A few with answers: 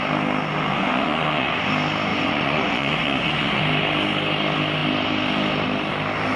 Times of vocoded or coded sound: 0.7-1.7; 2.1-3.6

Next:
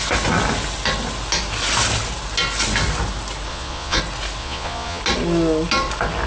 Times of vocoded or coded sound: 3.5-4.0; 4.4-5.0

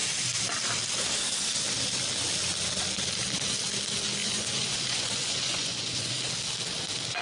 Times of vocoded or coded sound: 4.2-6.1